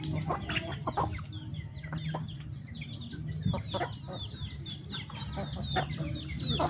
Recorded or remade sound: recorded